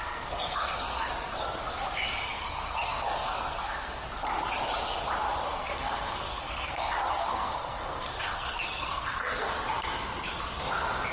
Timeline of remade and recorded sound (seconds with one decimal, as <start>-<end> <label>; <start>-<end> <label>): 0.0-1.1 remade; 1.1-2.3 recorded; 2.3-4.0 remade; 4.0-5.5 recorded; 5.5-9.5 remade; 9.5-11.1 recorded